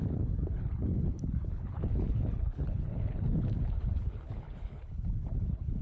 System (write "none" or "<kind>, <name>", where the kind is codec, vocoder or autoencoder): codec, HILCodec